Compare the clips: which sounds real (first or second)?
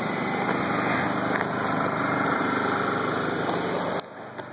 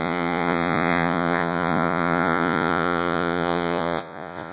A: first